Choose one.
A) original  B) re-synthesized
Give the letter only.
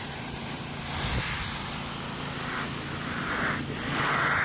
A